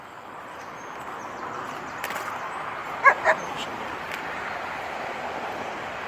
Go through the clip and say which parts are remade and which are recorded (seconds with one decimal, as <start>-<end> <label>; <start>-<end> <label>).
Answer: 0.0-2.8 recorded; 2.8-3.3 remade; 3.3-3.7 recorded; 3.7-6.1 remade